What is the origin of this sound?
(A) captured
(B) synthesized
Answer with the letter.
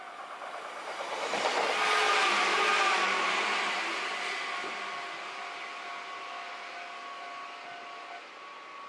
A